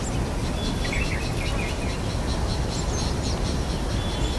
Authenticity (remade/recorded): recorded